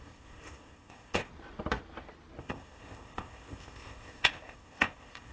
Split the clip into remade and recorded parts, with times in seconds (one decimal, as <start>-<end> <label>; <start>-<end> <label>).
0.0-1.3 remade; 1.3-2.4 recorded; 2.4-5.3 remade